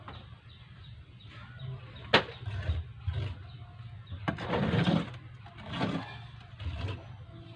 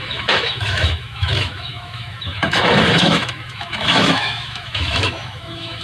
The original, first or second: first